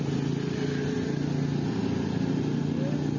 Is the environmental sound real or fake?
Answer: real